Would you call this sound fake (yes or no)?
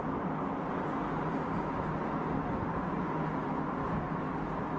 no